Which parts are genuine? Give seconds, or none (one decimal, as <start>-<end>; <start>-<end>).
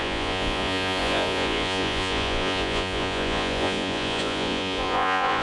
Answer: none